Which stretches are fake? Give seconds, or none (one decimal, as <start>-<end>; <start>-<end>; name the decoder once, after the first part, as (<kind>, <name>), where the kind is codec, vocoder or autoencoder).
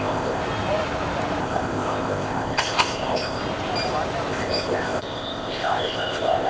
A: 0.0-0.4 (codec, ZipCodec); 1.4-3.4; 4.3-6.5